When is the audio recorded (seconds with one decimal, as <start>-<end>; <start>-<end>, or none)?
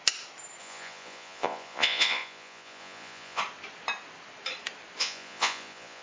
0.0-0.6; 3.4-5.0